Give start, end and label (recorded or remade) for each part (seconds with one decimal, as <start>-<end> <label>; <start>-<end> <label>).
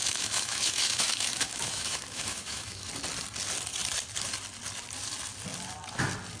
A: 0.0-2.9 remade; 2.9-6.4 recorded